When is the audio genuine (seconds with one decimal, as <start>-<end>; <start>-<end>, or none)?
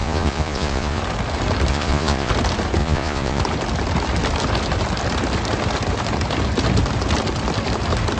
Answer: 1.0-1.7; 2.3-2.8; 3.4-8.2